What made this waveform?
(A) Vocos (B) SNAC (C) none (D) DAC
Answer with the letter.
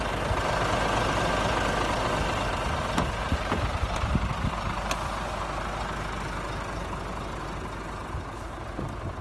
C